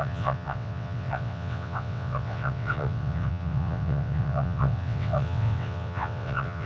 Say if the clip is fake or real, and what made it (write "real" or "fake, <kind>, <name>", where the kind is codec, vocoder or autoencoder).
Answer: fake, vocoder, WaveNeXt